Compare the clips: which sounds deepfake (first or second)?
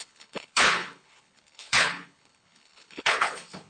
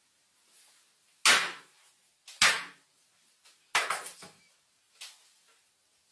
first